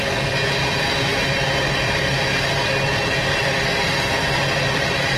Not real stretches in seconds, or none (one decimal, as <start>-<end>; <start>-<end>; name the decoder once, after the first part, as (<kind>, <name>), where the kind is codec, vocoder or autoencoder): none